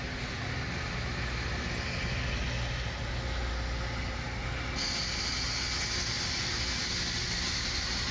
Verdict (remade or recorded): recorded